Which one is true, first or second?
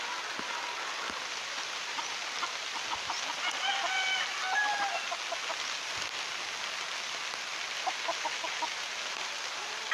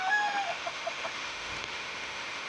first